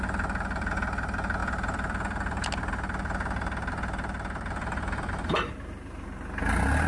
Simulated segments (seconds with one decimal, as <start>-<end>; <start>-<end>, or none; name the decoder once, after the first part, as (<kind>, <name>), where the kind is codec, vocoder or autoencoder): 1.4-5.5 (vocoder, BigVGAN v2)